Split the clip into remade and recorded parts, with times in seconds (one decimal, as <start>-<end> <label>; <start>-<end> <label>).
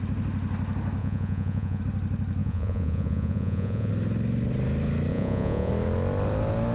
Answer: 0.0-1.0 recorded; 1.0-1.8 remade; 1.8-2.4 recorded; 2.4-3.9 remade; 3.9-5.1 recorded; 5.1-5.7 remade; 5.7-6.7 recorded